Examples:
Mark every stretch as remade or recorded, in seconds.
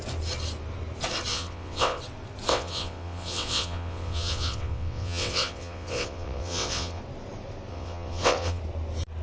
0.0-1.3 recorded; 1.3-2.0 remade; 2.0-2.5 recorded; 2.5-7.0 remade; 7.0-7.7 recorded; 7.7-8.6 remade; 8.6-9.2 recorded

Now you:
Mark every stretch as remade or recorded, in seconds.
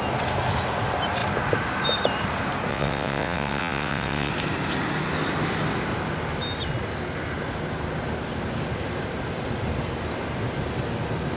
0.0-2.7 recorded; 2.7-4.3 remade; 4.3-11.4 recorded